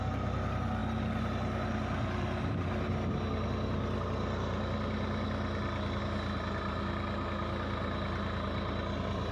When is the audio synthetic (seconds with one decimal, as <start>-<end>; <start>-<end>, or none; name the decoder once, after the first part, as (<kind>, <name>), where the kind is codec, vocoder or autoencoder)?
none